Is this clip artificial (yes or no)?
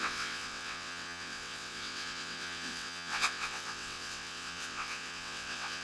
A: yes